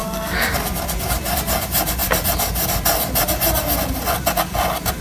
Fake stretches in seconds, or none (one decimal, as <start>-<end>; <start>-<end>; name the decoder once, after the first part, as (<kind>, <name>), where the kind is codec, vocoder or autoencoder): 0.0-0.5 (codec, SNAC)